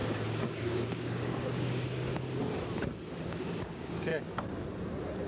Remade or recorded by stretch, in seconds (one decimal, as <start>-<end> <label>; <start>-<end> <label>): 0.0-2.1 remade; 2.1-3.2 recorded; 3.2-4.1 remade; 4.1-5.3 recorded